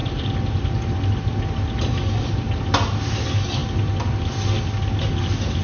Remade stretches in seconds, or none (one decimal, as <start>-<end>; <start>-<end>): none